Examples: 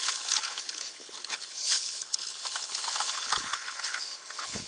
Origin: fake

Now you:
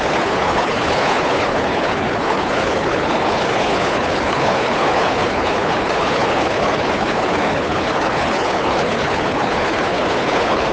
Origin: fake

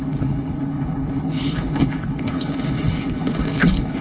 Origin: fake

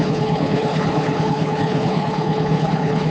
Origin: fake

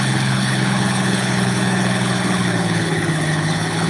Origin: fake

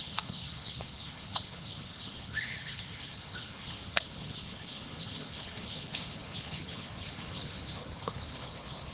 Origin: fake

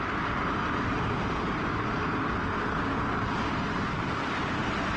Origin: real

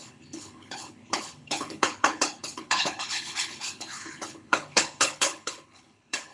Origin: fake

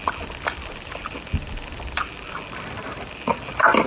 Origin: real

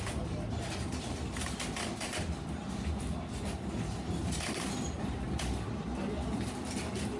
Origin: real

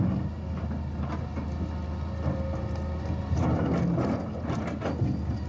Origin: real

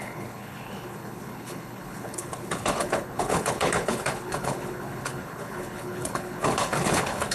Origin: fake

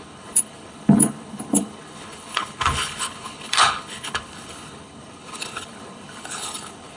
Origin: fake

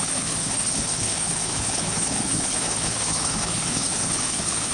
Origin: fake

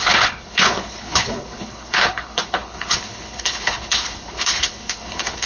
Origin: fake